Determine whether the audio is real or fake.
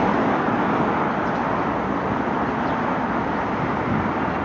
real